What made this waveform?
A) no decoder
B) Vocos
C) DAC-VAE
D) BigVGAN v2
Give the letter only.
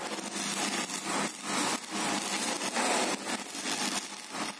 A